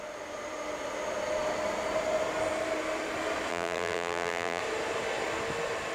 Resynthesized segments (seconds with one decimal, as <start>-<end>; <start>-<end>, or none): 3.5-4.6